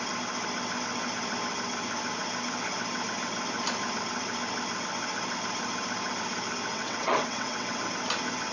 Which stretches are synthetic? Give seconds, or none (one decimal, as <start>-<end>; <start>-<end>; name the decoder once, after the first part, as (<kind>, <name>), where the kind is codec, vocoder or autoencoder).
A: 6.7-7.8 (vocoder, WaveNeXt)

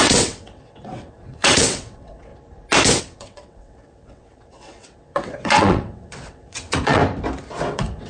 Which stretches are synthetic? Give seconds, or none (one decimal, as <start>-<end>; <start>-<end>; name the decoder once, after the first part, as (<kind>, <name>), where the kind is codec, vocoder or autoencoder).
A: 0.0-2.3 (vocoder, WaveNeXt); 3.0-7.0; 7.6-8.1

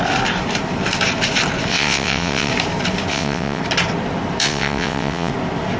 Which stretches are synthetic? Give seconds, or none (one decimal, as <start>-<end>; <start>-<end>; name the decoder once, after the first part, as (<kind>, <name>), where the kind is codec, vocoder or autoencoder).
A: 1.7-2.5 (vocoder, WaveNeXt); 3.1-3.6; 4.4-5.3